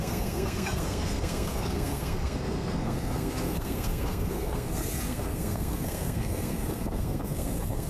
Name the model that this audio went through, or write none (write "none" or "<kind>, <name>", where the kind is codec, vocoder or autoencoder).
codec, SNAC